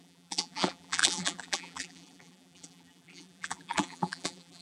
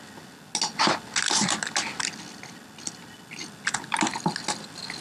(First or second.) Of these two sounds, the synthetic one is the first